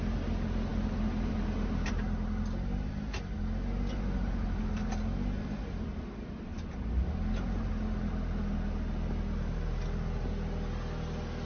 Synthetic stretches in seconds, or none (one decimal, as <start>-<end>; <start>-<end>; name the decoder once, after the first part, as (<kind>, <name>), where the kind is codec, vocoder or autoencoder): none